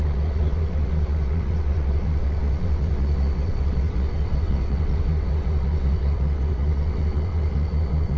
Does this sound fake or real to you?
fake